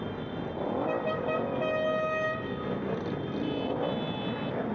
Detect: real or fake real